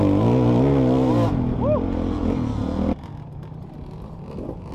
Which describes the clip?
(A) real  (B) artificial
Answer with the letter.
A